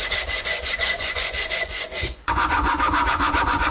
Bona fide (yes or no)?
no